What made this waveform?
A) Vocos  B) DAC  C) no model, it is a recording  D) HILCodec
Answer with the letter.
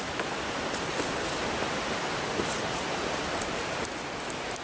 C